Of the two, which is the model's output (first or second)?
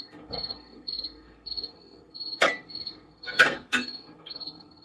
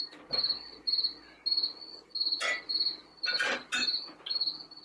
first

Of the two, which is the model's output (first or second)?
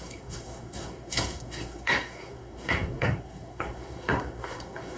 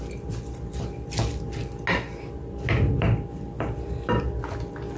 first